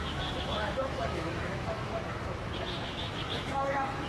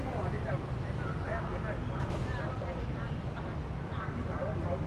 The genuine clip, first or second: second